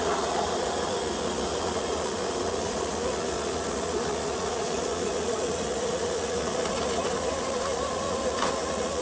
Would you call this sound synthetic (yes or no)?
yes